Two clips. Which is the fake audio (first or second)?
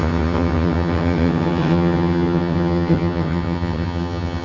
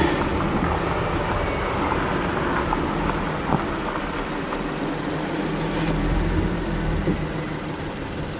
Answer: first